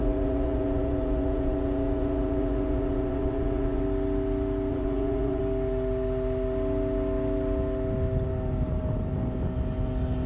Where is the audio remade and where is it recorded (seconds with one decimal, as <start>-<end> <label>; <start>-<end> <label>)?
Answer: 0.0-3.8 remade; 3.8-4.7 recorded; 4.7-5.4 remade; 5.4-10.3 recorded